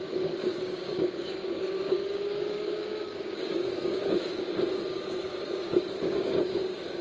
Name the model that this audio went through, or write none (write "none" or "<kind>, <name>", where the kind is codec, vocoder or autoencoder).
codec, DAC